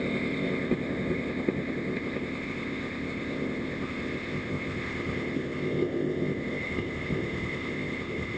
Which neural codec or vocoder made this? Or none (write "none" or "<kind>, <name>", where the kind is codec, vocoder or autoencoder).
codec, ZipCodec